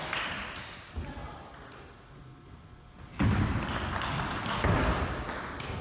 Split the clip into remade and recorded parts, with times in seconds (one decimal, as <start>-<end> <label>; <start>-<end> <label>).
0.0-5.8 recorded